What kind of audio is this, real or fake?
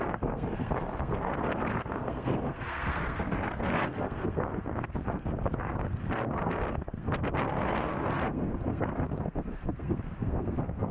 fake